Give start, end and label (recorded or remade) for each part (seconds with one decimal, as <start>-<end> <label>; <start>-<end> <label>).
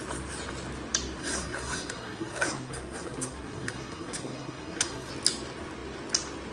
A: 0.0-1.2 recorded; 1.2-5.1 remade; 5.1-6.5 recorded